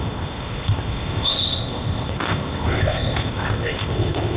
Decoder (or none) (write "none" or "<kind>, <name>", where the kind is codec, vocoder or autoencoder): codec, ZipCodec